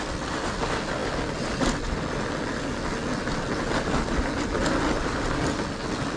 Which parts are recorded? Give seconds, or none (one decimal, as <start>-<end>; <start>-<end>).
0.0-6.2